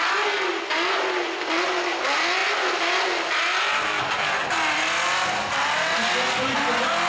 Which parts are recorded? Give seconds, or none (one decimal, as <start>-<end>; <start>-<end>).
0.0-7.1